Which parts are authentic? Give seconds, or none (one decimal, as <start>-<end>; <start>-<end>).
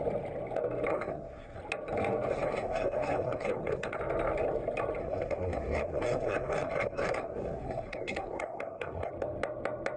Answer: 0.0-0.9; 1.6-2.3; 4.0-5.0; 9.1-10.0